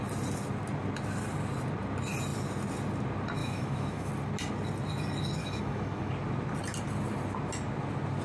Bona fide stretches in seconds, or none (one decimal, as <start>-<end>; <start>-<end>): 0.0-3.4; 4.1-5.4; 6.1-8.2